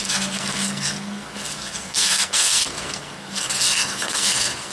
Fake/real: fake